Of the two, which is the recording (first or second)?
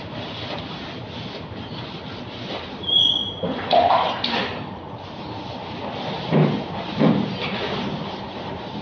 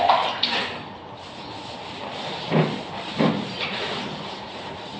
second